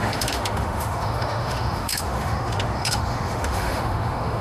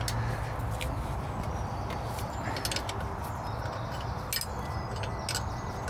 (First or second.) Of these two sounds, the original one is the second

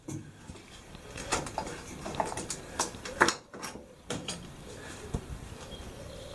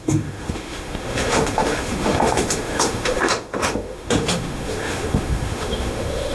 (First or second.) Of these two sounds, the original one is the first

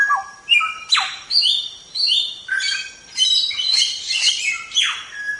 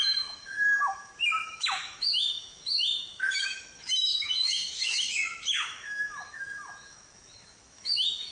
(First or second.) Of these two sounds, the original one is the first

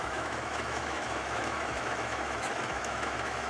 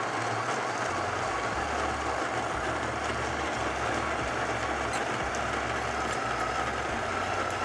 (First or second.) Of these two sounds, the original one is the second